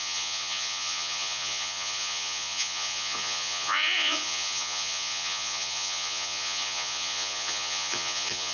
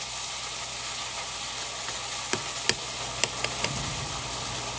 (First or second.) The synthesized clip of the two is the first